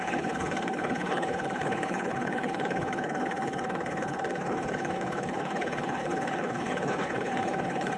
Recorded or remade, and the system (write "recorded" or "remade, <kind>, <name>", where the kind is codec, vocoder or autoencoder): remade, codec, HILCodec